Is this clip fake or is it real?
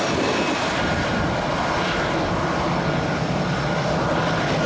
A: real